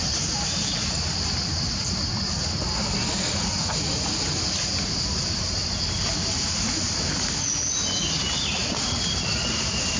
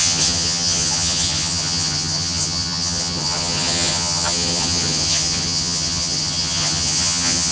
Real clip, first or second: first